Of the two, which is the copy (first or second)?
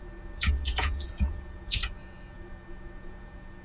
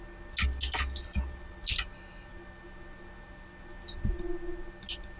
first